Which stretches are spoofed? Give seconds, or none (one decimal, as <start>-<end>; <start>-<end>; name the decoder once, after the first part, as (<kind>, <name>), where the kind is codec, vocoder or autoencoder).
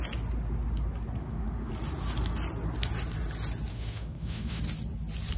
1.2-1.7 (autoencoder, DAC-VAE); 3.7-4.6